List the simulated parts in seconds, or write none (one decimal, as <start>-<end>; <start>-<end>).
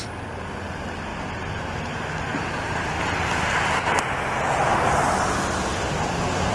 none